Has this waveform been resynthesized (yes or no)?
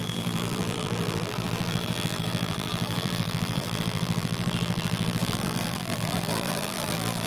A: yes